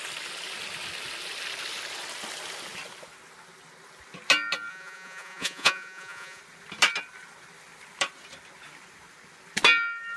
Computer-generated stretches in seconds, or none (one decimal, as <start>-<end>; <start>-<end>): 4.7-6.4